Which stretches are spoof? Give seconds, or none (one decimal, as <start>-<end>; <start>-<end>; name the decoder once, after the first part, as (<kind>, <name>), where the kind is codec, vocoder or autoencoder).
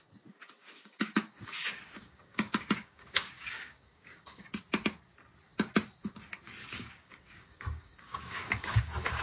0.6-4.6 (codec, DAC); 6.6-9.2